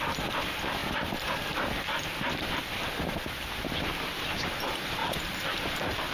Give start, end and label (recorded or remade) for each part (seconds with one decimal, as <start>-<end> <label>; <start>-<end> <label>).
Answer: 0.0-5.0 recorded; 5.0-6.1 remade